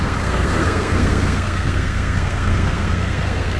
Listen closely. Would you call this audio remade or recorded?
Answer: remade